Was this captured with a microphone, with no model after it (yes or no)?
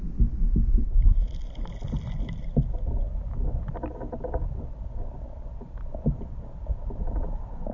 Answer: yes